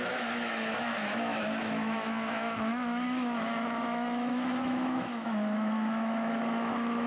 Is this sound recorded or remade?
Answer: remade